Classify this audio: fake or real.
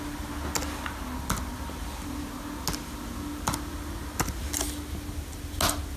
real